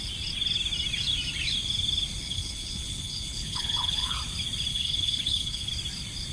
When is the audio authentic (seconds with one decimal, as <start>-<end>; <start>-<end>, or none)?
0.0-2.2; 4.2-4.7; 5.7-6.3